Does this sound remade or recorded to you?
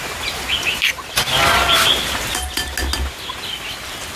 recorded